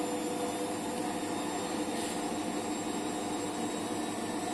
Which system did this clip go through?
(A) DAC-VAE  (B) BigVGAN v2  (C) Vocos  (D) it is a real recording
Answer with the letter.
D